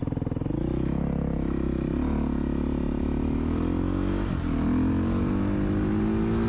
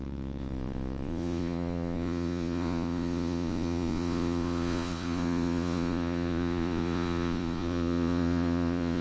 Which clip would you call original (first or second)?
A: first